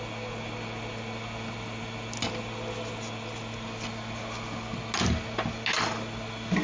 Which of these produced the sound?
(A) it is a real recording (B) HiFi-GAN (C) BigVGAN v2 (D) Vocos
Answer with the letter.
A